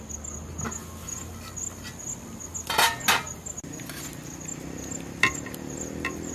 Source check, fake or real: real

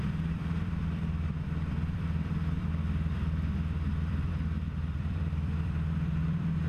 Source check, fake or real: fake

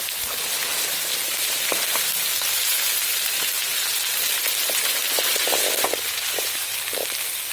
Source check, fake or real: real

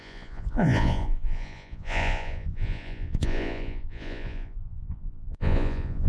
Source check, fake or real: fake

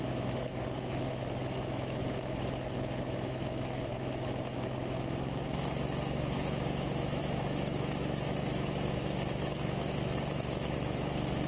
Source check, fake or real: fake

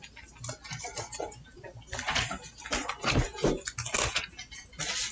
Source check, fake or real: real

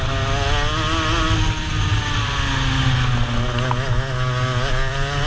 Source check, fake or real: real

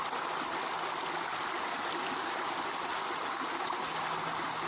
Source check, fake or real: real